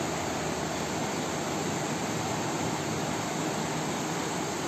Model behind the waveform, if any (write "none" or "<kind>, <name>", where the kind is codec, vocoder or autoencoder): none